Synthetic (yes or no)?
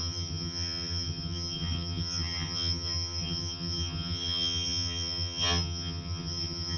yes